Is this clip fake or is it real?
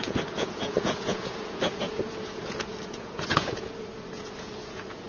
fake